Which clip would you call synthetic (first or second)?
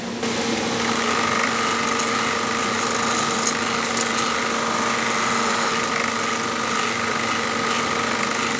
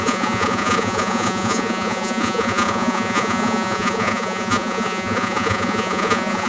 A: second